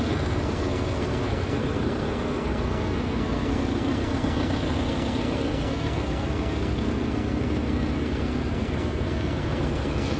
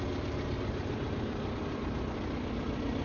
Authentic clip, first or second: second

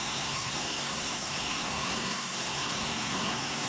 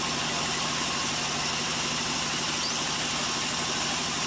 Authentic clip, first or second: second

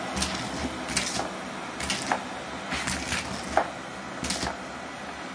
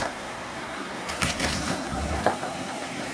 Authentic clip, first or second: first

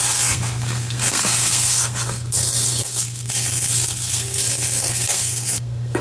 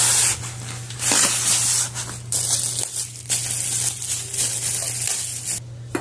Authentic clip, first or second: second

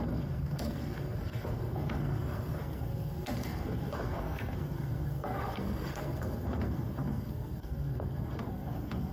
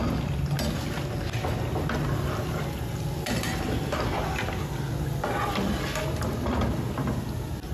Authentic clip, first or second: second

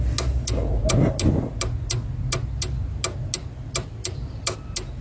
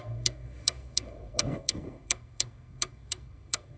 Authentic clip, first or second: first